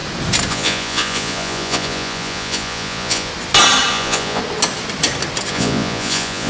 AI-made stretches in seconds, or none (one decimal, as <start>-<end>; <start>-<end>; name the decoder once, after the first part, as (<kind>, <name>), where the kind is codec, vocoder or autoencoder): 0.5-3.3 (vocoder, Vocos); 3.9-4.4; 5.5-6.5